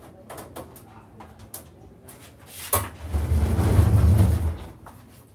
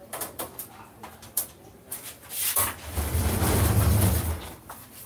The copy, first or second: second